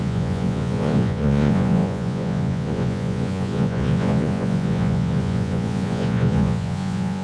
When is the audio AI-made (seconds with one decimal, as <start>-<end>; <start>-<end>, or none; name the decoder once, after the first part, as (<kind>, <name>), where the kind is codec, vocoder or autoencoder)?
0.0-7.2 (vocoder, Vocos)